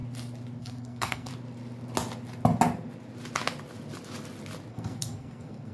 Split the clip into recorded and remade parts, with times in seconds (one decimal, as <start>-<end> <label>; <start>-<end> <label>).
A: 0.0-0.6 recorded; 0.6-1.3 remade; 1.3-4.7 recorded; 4.7-5.7 remade